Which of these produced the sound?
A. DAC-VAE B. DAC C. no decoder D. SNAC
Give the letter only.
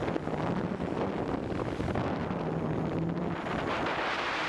C